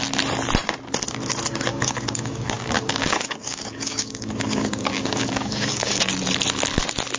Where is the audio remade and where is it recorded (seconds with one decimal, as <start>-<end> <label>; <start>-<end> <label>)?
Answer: 0.0-1.7 recorded; 1.7-6.0 remade; 6.0-7.2 recorded